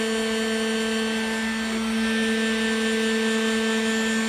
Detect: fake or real real